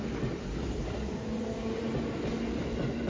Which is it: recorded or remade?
recorded